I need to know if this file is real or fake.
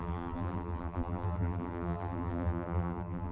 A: fake